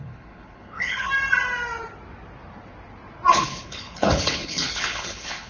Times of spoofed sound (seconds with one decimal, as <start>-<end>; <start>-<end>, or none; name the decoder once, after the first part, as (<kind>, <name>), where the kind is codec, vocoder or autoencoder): 0.0-1.1 (codec, HILCodec); 3.3-5.5